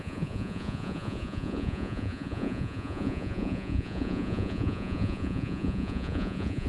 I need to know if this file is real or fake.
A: fake